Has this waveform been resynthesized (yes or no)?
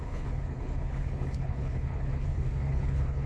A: yes